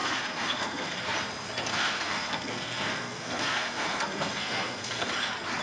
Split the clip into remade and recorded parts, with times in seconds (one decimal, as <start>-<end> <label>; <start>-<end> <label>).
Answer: 0.0-1.0 remade; 1.0-1.7 recorded; 1.7-5.1 remade; 5.1-5.6 recorded